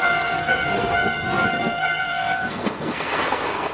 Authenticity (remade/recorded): remade